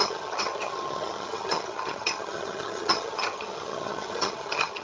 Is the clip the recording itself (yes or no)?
no